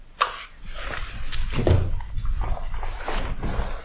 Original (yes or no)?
yes